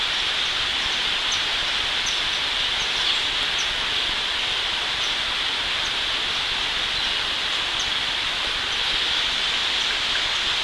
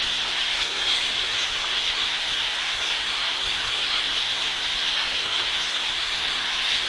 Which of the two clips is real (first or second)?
first